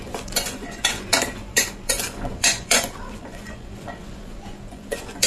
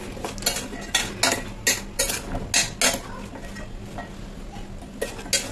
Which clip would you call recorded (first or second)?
second